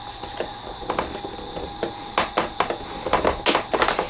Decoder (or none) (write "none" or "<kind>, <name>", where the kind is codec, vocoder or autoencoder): none